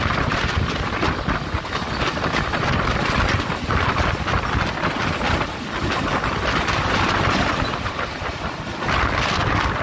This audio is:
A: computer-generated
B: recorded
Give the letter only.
B